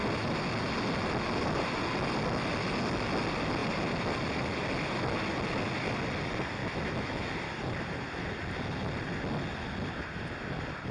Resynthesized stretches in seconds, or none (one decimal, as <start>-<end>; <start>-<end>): 6.6-7.3